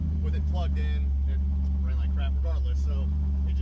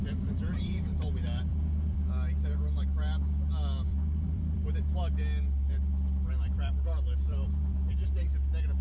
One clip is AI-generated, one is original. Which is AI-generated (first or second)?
second